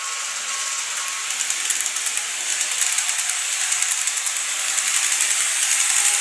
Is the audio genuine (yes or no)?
yes